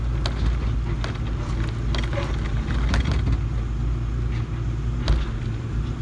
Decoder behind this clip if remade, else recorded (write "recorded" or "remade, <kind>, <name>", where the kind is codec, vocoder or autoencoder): recorded